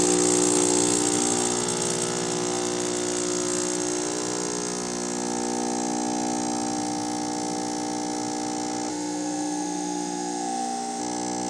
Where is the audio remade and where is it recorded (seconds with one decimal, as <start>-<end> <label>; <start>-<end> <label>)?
0.0-8.9 recorded; 8.9-11.0 remade; 11.0-11.5 recorded